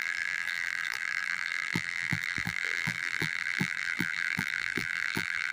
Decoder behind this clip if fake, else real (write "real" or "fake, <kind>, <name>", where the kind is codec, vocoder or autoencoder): fake, vocoder, BigVGAN v2